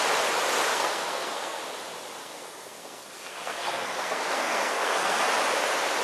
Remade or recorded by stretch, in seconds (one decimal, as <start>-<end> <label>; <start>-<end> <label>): 0.0-0.7 recorded; 0.7-1.6 remade; 1.6-2.2 recorded; 2.2-5.3 remade; 5.3-6.0 recorded